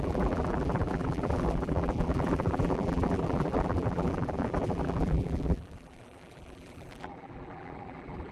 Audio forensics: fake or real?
fake